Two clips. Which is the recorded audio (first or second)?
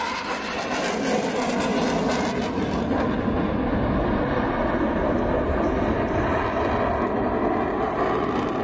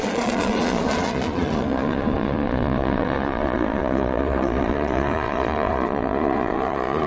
first